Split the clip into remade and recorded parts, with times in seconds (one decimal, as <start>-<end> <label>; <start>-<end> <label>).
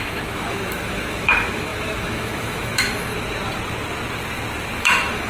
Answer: 0.0-3.1 remade; 3.1-4.8 recorded; 4.8-5.3 remade